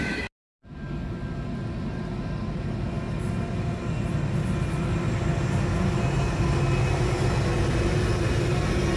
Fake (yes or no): no